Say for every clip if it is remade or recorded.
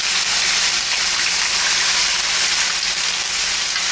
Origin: recorded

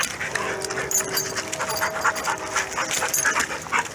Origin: recorded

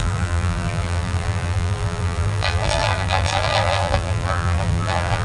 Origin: remade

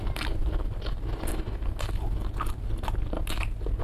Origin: recorded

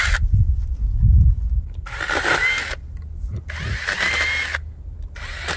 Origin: recorded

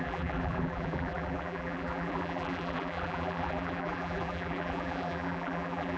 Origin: remade